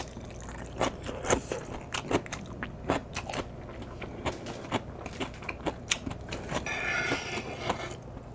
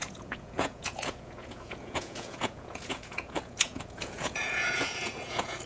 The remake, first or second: second